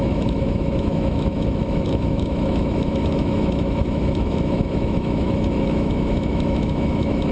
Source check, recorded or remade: remade